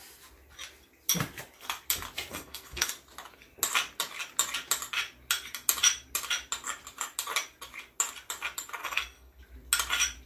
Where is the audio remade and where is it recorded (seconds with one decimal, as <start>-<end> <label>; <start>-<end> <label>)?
0.0-2.3 recorded; 2.3-2.9 remade; 2.9-8.8 recorded; 8.8-9.4 remade; 9.4-10.3 recorded